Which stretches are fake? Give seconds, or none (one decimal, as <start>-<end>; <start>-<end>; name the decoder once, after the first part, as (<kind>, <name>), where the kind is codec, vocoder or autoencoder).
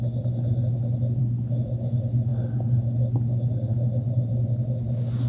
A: none